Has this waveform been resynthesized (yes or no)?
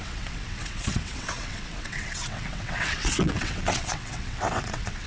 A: yes